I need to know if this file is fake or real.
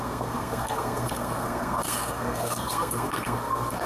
fake